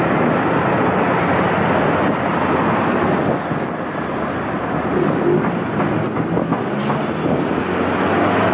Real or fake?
real